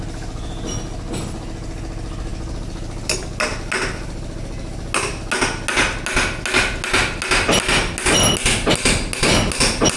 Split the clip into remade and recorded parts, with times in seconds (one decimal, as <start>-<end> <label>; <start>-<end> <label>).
0.0-10.0 recorded

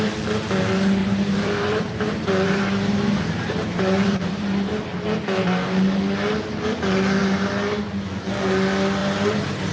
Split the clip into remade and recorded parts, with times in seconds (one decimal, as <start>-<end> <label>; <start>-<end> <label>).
0.0-1.0 recorded; 1.0-4.9 remade; 4.9-7.2 recorded; 7.2-7.8 remade; 7.8-9.0 recorded; 9.0-9.7 remade

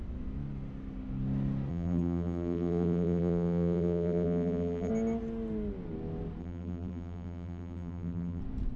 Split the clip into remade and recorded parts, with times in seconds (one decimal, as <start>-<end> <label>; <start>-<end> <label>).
0.0-1.7 recorded; 1.7-4.9 remade; 4.9-6.4 recorded; 6.4-8.4 remade; 8.4-8.8 recorded

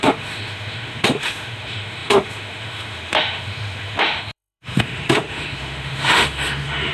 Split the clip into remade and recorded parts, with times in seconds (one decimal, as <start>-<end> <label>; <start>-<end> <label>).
0.0-6.9 remade

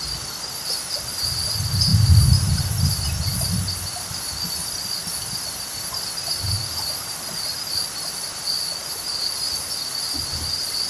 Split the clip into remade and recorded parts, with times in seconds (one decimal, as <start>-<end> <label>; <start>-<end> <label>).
0.0-1.9 recorded; 1.9-2.6 remade; 2.6-8.8 recorded; 8.8-9.9 remade; 9.9-10.9 recorded

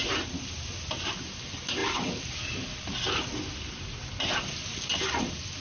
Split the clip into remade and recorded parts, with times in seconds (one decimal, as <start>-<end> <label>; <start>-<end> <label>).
0.0-5.6 recorded